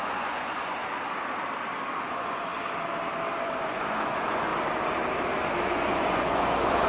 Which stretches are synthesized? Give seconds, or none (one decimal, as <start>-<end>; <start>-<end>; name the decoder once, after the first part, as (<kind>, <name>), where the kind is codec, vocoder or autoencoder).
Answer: 0.0-0.8 (vocoder, Vocos); 2.1-2.5; 3.3-4.5; 5.6-6.9